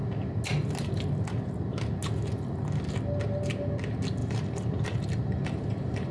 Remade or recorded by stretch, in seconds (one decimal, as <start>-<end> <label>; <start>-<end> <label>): 0.0-4.2 recorded; 4.2-6.1 remade